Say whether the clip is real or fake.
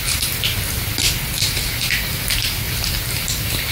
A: real